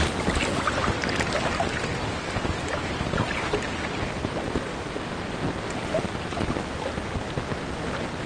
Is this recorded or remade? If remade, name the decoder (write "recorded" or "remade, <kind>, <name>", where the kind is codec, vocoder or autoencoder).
recorded